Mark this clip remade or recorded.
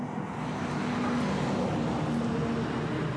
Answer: recorded